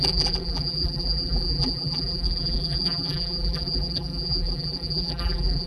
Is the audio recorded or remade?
remade